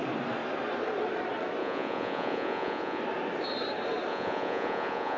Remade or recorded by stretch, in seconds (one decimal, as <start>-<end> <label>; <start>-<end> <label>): 0.0-1.6 recorded; 1.6-3.0 remade; 3.0-4.1 recorded; 4.1-5.2 remade